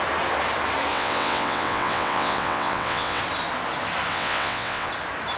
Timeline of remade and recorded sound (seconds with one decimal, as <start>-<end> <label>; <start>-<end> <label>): 0.0-0.9 recorded; 0.9-3.2 remade; 3.2-4.1 recorded; 4.1-4.9 remade; 4.9-5.4 recorded